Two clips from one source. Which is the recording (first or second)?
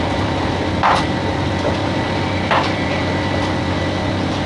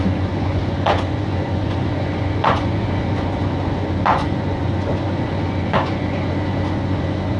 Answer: first